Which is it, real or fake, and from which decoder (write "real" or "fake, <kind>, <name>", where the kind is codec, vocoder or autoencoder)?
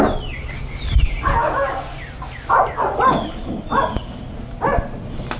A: real